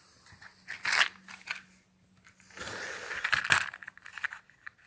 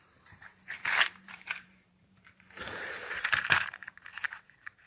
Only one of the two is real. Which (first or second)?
first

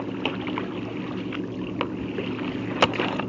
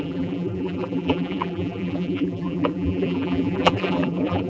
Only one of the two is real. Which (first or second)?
first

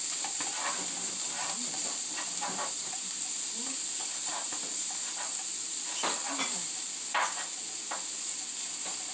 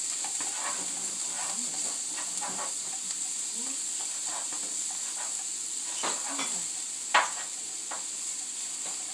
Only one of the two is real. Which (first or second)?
second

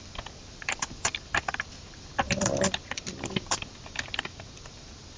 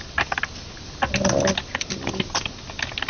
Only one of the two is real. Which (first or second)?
second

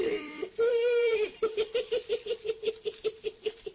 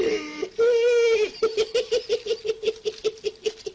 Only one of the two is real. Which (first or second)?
second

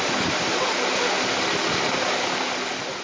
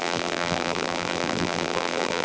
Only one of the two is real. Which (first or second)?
first